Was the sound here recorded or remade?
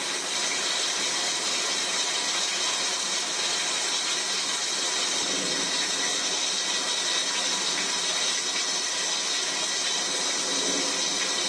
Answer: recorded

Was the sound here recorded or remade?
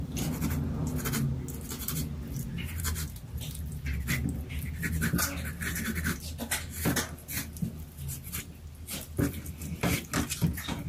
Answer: recorded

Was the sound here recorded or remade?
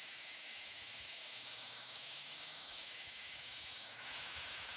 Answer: remade